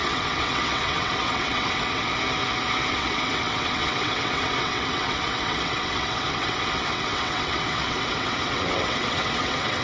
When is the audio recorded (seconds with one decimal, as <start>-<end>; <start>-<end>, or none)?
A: 2.1-2.9